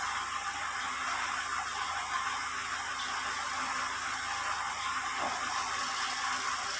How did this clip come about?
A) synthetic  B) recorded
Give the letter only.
B